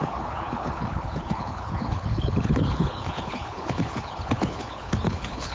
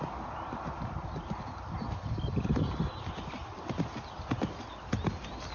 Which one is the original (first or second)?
second